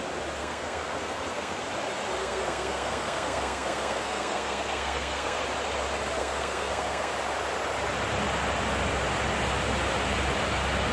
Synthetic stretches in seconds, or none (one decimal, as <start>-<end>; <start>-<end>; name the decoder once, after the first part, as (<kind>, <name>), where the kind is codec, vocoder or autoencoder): 0.4-1.6 (codec, SNAC); 2.2-5.4; 6.2-7.1